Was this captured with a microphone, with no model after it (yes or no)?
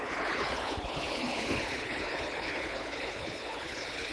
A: no